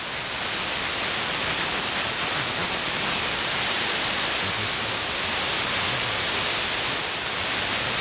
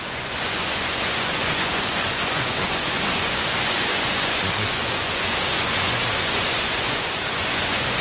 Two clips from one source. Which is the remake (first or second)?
second